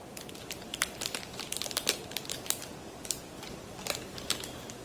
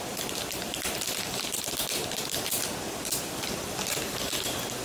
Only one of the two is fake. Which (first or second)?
second